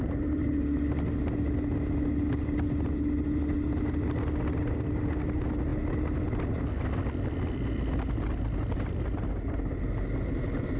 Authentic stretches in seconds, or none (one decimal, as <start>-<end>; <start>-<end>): 0.0-10.8